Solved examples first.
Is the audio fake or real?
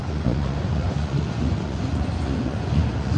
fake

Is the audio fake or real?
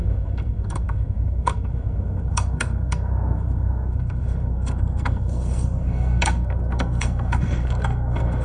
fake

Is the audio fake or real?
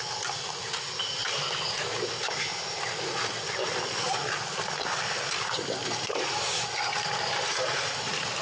real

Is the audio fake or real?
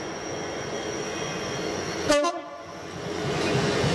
fake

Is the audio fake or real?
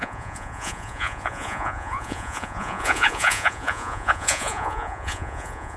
fake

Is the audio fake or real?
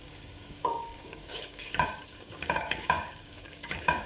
fake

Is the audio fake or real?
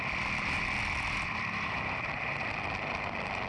real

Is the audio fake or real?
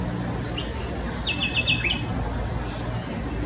real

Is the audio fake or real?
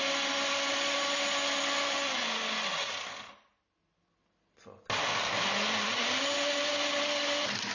real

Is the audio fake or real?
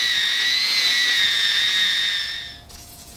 fake